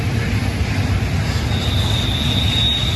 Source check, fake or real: real